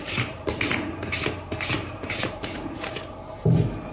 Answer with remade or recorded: remade